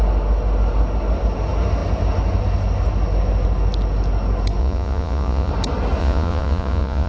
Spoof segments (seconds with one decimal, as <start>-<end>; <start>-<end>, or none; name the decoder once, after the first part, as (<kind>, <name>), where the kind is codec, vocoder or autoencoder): 4.6-5.5 (vocoder, Vocos); 6.0-7.1